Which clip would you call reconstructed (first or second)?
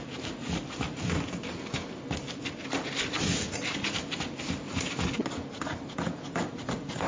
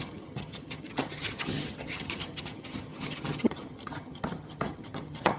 second